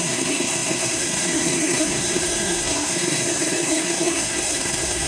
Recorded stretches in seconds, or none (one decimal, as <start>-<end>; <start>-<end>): none